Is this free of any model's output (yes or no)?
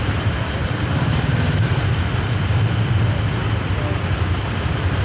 no